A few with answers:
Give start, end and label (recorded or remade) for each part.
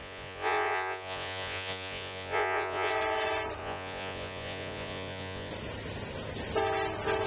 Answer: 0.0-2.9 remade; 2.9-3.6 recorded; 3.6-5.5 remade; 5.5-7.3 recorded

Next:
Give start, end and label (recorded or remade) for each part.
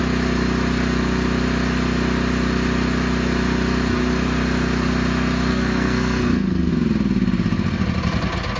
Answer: 0.0-5.5 recorded; 5.5-6.7 remade; 6.7-8.6 recorded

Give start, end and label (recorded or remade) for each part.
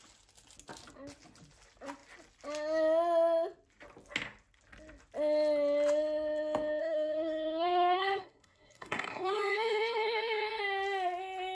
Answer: 0.0-6.8 recorded; 6.8-10.6 remade; 10.6-11.5 recorded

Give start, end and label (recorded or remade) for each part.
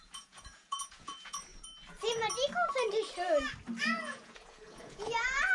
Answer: 0.0-1.5 remade; 1.5-3.8 recorded; 3.8-5.5 remade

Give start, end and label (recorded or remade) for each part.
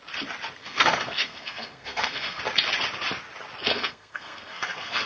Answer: 0.0-0.6 recorded; 0.6-2.4 remade; 2.4-3.7 recorded; 3.7-5.1 remade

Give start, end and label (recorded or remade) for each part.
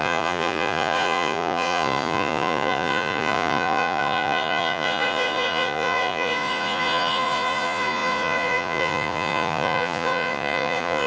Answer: 0.0-11.1 remade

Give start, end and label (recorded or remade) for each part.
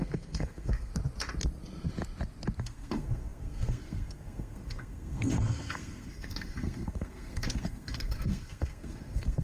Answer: 0.0-0.9 remade; 0.9-2.6 recorded; 2.6-9.4 remade